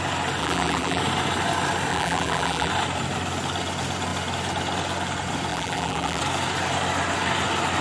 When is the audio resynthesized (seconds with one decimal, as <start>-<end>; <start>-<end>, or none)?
0.4-1.0; 1.9-2.7; 5.5-6.2